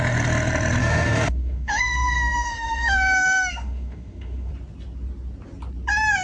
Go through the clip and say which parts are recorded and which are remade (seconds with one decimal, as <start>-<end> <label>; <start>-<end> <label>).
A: 0.0-0.8 recorded; 0.8-4.5 remade; 4.5-6.2 recorded